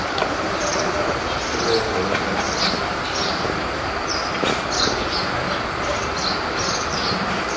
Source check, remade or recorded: recorded